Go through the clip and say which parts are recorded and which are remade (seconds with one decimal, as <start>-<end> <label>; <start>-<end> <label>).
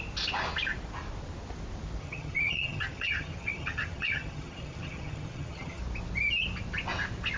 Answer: 0.0-2.0 recorded; 2.0-5.8 remade; 5.8-7.4 recorded